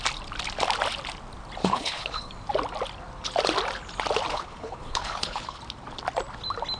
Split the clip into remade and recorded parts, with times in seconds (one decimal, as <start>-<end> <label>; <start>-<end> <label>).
0.0-1.6 recorded; 1.6-2.3 remade; 2.3-4.3 recorded; 4.3-5.6 remade; 5.6-6.8 recorded